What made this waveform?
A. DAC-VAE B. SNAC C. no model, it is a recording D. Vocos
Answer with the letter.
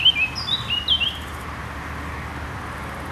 C